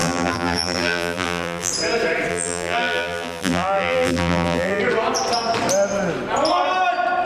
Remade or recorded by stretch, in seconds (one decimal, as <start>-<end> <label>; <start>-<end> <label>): 0.0-1.7 remade; 1.7-2.3 recorded; 2.3-4.8 remade; 4.8-7.3 recorded